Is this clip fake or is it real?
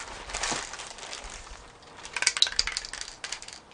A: real